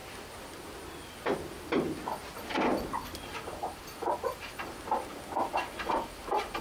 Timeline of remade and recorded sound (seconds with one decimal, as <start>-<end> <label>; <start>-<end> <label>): 0.0-6.6 recorded

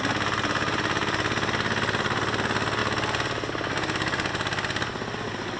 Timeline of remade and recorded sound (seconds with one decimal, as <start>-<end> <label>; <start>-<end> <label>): 0.0-5.6 recorded

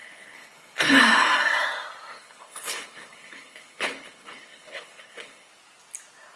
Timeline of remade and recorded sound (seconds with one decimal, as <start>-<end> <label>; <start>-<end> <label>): 0.0-1.0 remade; 1.0-2.1 recorded; 2.1-5.5 remade; 5.5-6.4 recorded

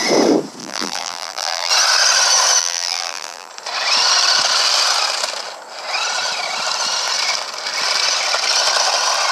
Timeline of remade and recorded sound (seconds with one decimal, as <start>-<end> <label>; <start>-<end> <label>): 0.0-0.6 recorded; 0.6-1.7 remade; 1.7-2.6 recorded; 2.6-3.5 remade; 3.5-9.3 recorded

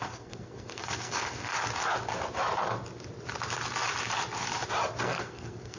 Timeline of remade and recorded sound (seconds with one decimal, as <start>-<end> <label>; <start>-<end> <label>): 0.0-1.5 remade; 1.5-5.0 recorded; 5.0-5.8 remade

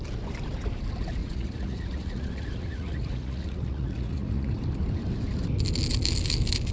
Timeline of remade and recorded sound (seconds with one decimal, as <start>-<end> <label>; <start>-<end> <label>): 0.0-1.2 recorded; 1.2-4.6 remade; 4.6-6.7 recorded